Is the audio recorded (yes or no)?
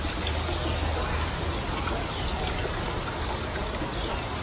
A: yes